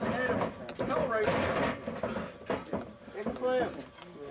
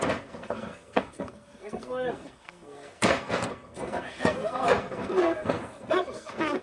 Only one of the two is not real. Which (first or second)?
second